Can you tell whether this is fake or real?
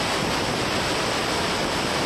real